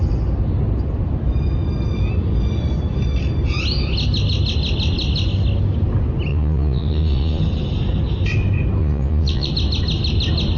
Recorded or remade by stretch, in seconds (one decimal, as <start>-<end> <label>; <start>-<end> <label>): 0.0-6.3 recorded; 6.3-7.4 remade; 7.4-8.8 recorded; 8.8-9.5 remade; 9.5-10.6 recorded